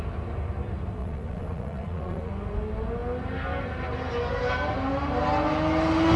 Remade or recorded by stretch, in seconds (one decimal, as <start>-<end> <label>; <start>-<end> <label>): 0.0-1.0 recorded; 1.0-2.3 remade; 2.3-6.2 recorded